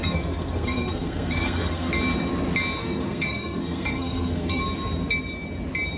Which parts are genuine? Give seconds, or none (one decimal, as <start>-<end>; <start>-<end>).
1.9-2.8; 4.6-6.0